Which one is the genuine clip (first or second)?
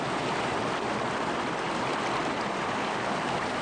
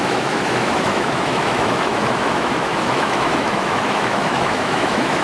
first